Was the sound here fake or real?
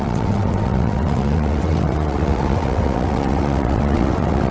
fake